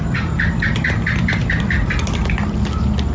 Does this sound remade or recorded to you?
recorded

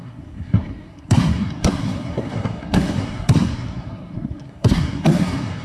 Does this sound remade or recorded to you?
remade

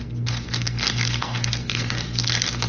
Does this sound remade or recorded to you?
remade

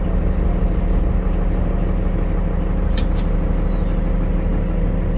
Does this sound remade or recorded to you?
recorded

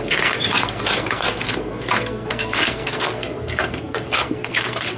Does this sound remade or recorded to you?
remade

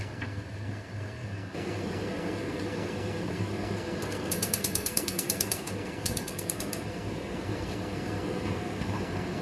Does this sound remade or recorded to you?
remade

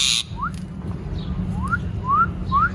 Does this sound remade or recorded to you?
recorded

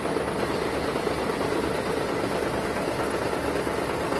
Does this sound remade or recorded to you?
recorded